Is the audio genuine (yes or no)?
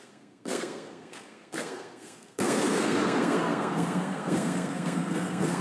no